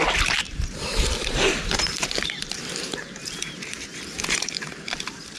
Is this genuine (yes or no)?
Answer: no